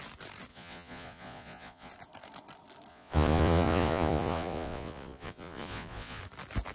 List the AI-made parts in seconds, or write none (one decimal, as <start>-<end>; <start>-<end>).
0.5-1.9; 2.9-6.2